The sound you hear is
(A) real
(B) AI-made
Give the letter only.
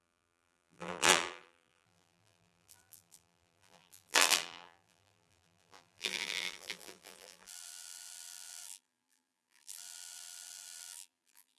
B